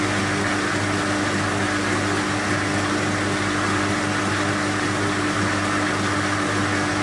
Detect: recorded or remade recorded